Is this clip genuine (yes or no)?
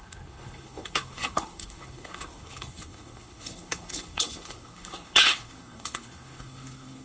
no